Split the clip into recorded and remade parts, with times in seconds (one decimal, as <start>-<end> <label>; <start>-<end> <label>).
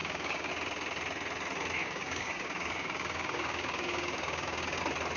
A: 0.0-0.5 remade; 0.5-1.8 recorded; 1.8-4.8 remade; 4.8-5.2 recorded